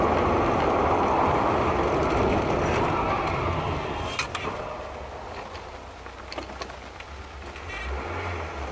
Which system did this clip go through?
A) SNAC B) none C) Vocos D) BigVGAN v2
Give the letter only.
B